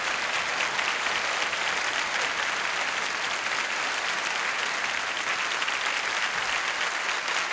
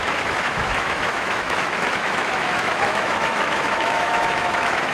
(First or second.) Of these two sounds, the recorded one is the first